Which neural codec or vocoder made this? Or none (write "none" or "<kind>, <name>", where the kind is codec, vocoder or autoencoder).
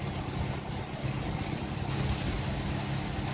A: none